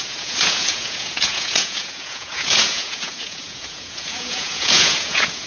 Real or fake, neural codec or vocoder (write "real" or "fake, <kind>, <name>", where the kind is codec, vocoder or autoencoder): fake, vocoder, Vocos